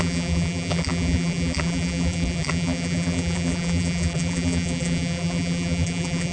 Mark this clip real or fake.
fake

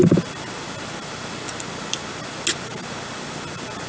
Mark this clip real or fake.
real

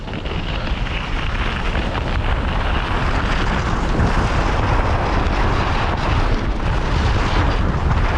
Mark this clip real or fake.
real